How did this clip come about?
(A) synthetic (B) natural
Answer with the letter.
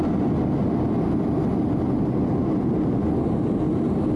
B